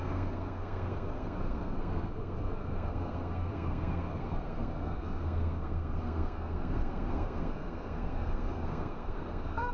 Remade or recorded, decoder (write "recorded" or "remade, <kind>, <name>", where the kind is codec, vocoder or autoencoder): remade, codec, SNAC